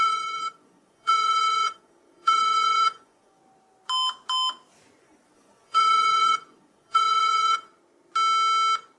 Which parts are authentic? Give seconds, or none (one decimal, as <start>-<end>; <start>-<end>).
3.4-5.0; 7.7-9.0